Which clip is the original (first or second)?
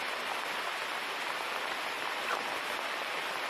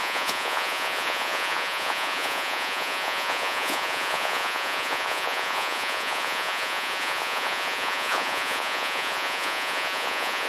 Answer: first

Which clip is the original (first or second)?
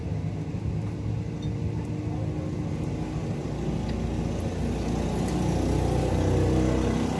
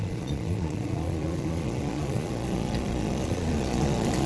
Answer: first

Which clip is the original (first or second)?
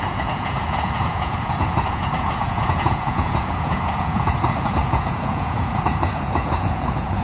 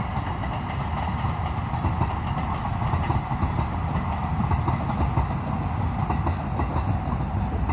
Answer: second